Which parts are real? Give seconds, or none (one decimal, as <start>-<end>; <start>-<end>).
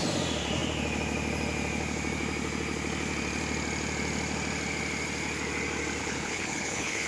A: 0.0-6.0